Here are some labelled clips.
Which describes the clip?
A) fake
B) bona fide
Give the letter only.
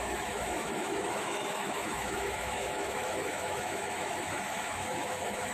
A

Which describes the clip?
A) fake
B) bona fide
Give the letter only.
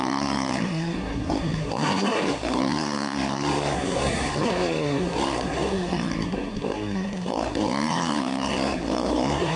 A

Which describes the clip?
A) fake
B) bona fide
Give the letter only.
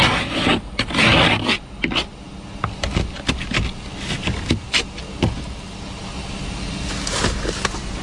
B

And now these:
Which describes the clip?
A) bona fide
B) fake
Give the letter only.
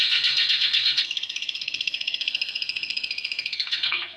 B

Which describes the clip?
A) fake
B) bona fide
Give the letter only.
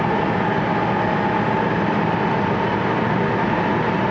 B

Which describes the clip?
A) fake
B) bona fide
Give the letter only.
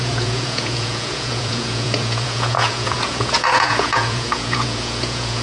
A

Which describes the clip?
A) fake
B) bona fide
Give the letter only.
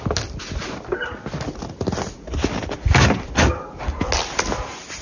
B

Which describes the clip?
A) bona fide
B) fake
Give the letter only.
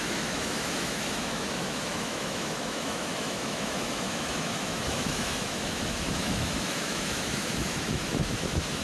B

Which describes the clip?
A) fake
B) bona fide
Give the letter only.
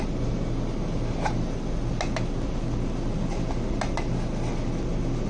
B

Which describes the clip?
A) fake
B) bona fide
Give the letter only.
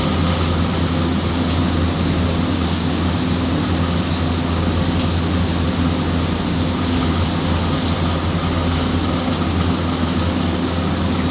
B